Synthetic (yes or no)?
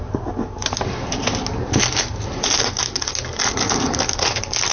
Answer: no